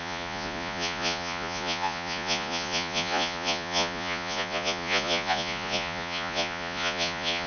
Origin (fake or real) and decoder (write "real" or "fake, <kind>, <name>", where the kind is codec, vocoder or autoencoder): fake, vocoder, Vocos